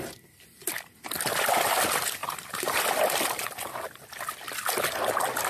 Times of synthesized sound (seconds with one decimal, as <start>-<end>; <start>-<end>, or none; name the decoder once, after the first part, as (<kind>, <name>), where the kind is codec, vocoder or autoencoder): 2.2-2.8 (vocoder, BigVGAN v2)